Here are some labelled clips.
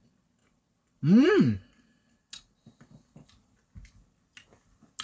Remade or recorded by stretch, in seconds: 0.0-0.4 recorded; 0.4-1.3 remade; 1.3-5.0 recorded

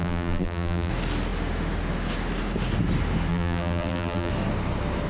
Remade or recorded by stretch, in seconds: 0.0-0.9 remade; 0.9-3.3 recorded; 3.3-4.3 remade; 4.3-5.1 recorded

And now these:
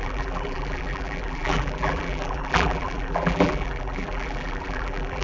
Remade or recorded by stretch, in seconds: 0.0-5.2 remade